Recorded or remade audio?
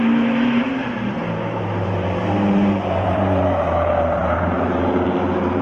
remade